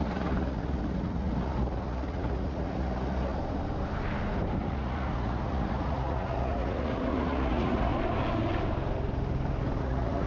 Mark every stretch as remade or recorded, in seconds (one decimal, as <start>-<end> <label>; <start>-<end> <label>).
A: 0.0-3.4 remade; 3.4-4.6 recorded; 4.6-7.9 remade; 7.9-9.8 recorded; 9.8-10.3 remade